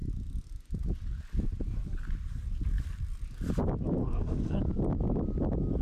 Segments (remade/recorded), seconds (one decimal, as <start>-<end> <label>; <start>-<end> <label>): 0.0-4.0 recorded; 4.0-4.6 remade; 4.6-5.8 recorded